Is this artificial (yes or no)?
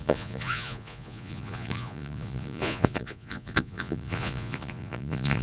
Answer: yes